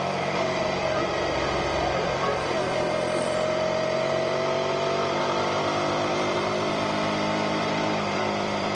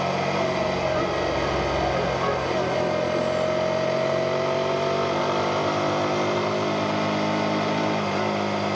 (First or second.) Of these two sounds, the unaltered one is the second